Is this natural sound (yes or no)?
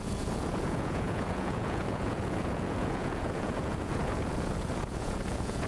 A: no